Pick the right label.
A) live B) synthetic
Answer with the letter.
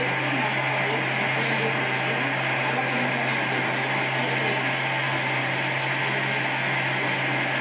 A